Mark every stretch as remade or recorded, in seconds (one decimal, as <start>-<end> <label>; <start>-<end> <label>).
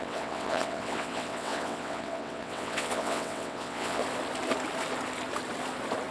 0.0-4.0 remade; 4.0-6.1 recorded